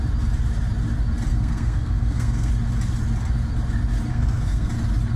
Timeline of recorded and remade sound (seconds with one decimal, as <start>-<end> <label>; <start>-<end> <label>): 0.0-1.3 recorded; 1.3-2.5 remade; 2.5-4.1 recorded; 4.1-4.7 remade; 4.7-5.2 recorded